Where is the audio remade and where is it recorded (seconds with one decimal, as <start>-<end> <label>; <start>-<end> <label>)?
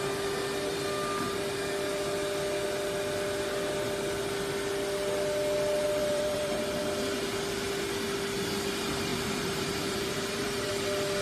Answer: 0.0-6.0 recorded; 6.0-6.6 remade; 6.6-9.1 recorded; 9.1-10.7 remade; 10.7-11.2 recorded